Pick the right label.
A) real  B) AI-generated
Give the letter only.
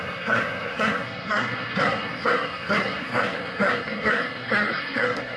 B